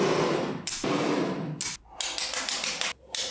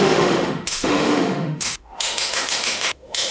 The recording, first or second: first